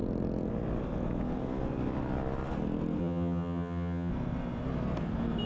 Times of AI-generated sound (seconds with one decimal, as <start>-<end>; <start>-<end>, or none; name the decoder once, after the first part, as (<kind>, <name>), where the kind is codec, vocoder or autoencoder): 3.0-4.1 (vocoder, HiFi-GAN)